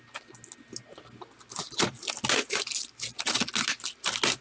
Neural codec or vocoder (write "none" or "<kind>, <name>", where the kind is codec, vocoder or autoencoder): none